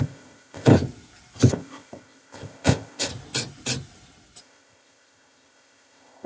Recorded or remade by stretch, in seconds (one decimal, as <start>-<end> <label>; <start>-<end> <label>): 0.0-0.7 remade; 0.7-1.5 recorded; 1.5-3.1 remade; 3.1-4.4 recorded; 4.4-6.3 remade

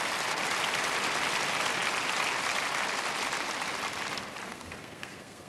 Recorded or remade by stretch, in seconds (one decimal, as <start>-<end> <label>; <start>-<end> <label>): 0.0-4.5 recorded; 4.5-5.5 remade

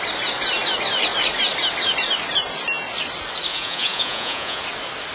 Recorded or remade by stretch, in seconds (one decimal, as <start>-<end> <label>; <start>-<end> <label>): 0.0-3.5 recorded; 3.5-4.6 remade; 4.6-5.1 recorded

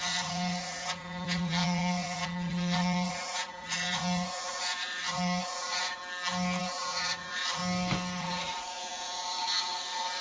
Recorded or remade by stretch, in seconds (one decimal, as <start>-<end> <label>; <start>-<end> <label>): 0.0-6.0 remade; 6.0-6.6 recorded; 6.6-7.6 remade; 7.6-8.2 recorded; 8.2-10.2 remade

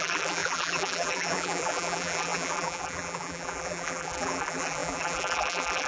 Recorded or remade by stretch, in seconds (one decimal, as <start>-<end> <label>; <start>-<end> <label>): 0.0-5.9 remade

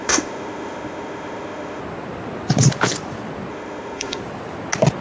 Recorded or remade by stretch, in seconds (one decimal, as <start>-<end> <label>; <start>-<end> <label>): 0.0-1.8 remade; 1.8-3.5 recorded; 3.5-4.2 remade; 4.2-5.0 recorded